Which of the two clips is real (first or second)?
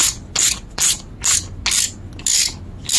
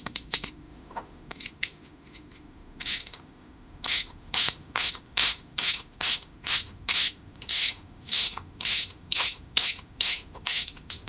first